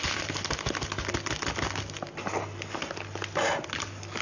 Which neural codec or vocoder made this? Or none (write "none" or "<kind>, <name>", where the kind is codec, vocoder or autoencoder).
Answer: none